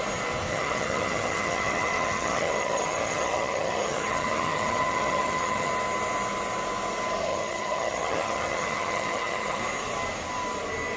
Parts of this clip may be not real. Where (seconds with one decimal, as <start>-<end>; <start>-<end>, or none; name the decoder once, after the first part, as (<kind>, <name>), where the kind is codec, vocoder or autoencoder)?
0.5-5.7 (vocoder, HiFi-GAN); 7.3-9.6